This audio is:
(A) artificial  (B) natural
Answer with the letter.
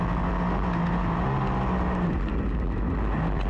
B